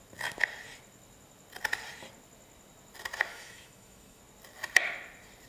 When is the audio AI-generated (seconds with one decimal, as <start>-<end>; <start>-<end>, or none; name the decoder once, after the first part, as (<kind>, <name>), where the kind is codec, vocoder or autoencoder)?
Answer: 3.3-4.2 (autoencoder, DAC-VAE)

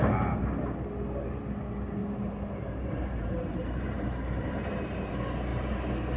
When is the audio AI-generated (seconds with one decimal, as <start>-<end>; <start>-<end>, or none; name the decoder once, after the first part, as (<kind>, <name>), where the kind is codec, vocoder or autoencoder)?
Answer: 0.0-0.6 (vocoder, BigVGAN v2); 2.0-5.1; 5.5-6.2

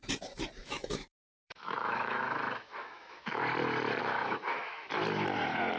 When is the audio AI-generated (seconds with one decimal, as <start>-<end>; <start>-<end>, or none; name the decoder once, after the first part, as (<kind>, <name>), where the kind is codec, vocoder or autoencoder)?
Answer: 0.6-3.4 (autoencoder, DAC-VAE); 4.0-4.9

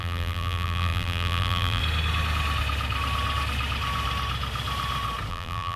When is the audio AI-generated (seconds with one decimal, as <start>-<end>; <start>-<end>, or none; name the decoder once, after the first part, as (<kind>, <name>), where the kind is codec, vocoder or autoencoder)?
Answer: 0.0-1.8 (vocoder, BigVGAN v2); 5.3-5.8

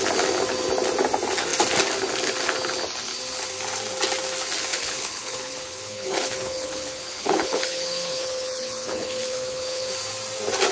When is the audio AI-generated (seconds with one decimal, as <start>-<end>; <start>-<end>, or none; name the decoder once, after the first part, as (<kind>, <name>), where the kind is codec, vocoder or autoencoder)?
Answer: 4.7-9.9 (codec, HILCodec)

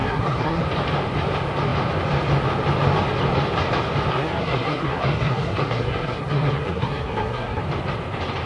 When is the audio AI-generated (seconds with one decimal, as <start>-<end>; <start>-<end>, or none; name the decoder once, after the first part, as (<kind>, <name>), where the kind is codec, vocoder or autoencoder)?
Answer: 0.0-0.6 (codec, SNAC); 4.1-7.6

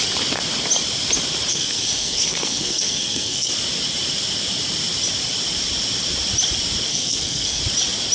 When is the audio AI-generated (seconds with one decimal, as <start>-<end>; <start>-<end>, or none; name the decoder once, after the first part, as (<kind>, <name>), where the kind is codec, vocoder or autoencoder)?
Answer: 1.5-3.5 (codec, SNAC); 6.9-7.6

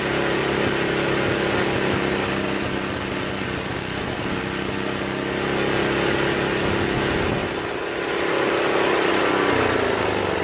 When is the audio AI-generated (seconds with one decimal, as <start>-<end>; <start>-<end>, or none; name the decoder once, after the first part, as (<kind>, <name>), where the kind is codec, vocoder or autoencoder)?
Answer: none